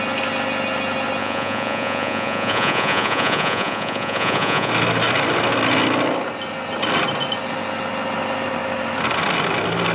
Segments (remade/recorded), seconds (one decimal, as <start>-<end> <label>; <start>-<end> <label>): 0.0-1.2 recorded; 1.2-4.7 remade; 4.7-9.9 recorded